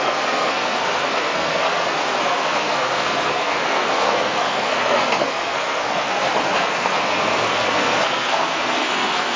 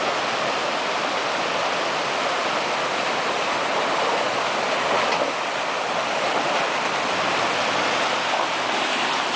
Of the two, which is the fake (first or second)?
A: first